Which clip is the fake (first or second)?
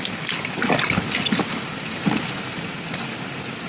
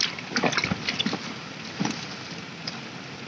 first